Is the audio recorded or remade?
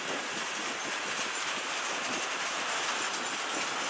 recorded